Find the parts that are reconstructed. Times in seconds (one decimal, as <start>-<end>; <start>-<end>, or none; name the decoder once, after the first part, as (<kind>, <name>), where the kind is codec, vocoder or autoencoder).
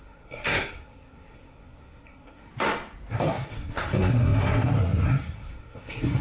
0.0-2.5 (codec, SNAC); 3.1-6.2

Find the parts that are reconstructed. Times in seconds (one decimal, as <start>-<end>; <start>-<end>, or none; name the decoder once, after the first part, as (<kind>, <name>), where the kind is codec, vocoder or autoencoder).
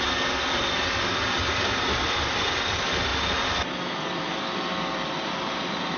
none